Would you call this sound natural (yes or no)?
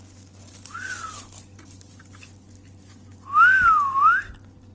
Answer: yes